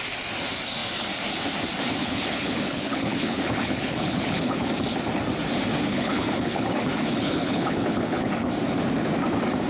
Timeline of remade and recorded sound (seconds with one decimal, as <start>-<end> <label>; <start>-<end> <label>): 0.0-2.0 recorded; 2.0-4.7 remade; 4.7-5.9 recorded; 5.9-8.5 remade; 8.5-9.7 recorded